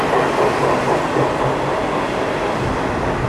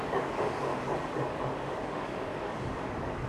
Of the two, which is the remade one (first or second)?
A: second